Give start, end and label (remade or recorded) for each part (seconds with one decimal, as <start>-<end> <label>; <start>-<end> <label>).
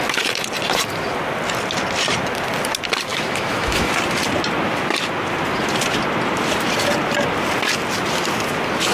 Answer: 0.0-3.1 recorded; 3.1-3.9 remade; 3.9-8.9 recorded